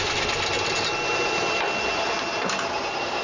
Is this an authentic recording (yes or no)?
yes